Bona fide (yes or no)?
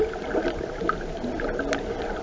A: yes